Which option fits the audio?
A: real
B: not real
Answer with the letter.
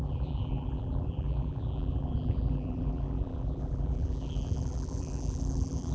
B